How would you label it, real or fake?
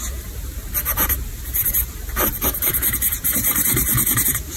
fake